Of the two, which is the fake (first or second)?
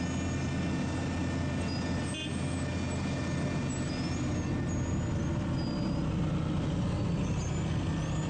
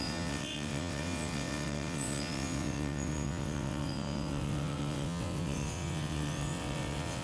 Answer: second